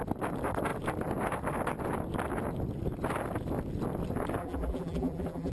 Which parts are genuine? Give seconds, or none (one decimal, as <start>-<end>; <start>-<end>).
0.0-4.4